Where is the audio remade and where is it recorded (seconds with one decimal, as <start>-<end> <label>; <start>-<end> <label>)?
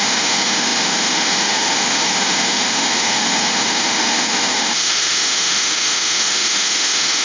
0.0-7.2 remade